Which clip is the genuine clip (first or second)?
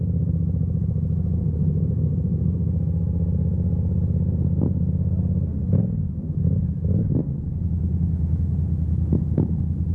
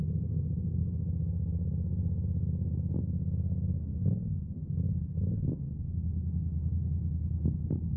first